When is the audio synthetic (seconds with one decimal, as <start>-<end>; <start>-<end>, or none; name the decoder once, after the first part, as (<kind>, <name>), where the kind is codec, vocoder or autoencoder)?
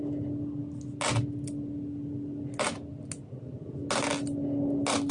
none